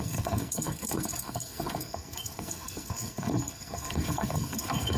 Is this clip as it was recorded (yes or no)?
no